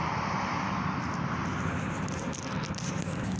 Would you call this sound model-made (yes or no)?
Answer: no